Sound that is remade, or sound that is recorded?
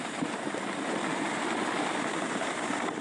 recorded